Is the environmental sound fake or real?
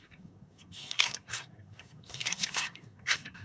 fake